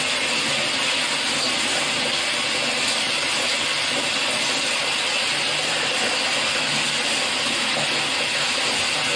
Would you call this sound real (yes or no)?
yes